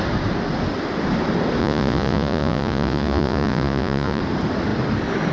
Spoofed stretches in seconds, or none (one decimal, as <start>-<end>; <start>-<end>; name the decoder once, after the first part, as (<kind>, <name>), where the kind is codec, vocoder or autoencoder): 1.6-4.2 (vocoder, Vocos)

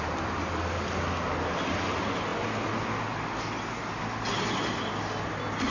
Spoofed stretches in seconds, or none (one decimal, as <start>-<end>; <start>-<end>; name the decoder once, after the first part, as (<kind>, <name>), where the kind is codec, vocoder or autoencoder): none